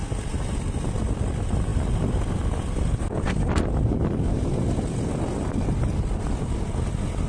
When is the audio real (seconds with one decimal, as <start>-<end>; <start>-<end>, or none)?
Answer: 0.0-7.3